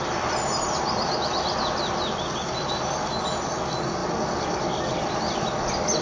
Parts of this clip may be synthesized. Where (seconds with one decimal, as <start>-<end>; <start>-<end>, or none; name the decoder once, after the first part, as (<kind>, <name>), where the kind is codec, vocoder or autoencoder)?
none